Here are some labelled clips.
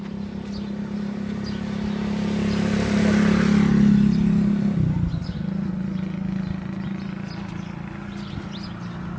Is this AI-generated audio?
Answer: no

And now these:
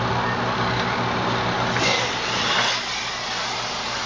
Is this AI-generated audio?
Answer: no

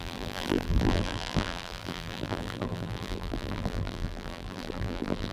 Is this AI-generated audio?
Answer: yes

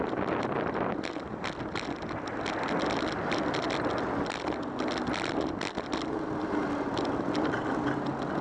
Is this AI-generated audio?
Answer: no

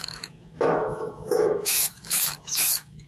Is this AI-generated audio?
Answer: yes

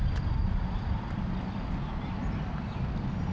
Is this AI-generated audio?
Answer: no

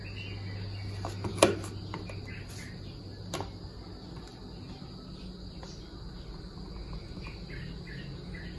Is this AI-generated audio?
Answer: no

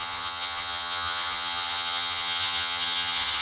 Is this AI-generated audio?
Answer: yes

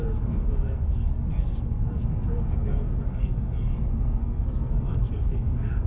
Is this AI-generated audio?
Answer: yes